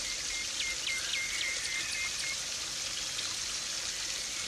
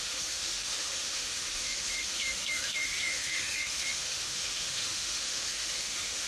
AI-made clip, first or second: second